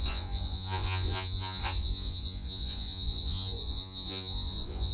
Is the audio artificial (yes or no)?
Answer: yes